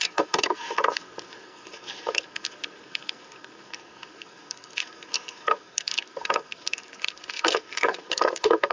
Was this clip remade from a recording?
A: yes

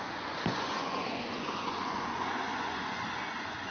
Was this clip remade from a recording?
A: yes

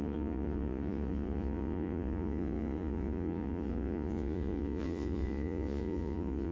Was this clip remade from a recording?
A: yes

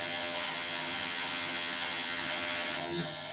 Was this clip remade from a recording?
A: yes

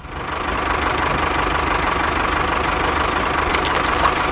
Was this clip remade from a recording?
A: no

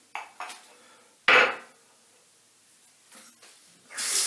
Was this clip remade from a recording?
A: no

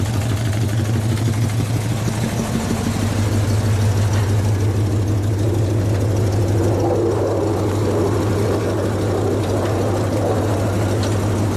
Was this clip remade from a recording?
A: no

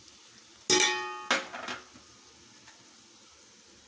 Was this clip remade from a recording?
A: no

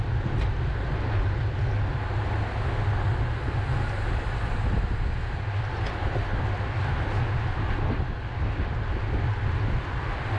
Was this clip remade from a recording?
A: no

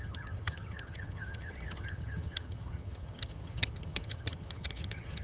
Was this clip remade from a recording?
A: yes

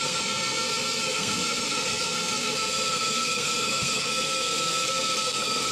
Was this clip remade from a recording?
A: yes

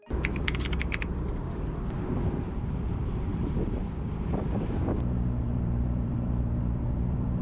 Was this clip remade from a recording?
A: yes